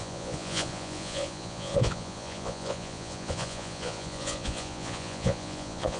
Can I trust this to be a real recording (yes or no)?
no